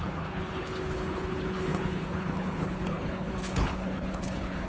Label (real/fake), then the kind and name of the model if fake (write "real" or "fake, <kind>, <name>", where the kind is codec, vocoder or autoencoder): fake, codec, HILCodec